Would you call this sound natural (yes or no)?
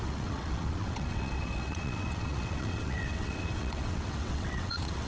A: no